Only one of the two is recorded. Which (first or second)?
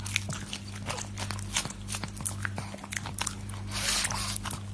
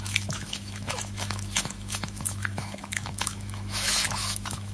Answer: first